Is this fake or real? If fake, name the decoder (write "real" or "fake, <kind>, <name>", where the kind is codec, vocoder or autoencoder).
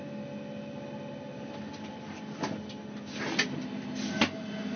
real